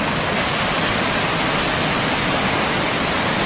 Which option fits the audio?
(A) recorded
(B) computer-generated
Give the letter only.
A